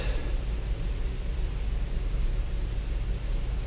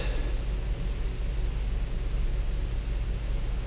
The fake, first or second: first